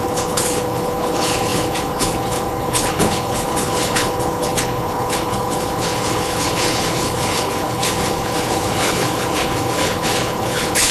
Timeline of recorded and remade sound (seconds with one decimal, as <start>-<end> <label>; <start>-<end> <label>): 0.0-10.9 remade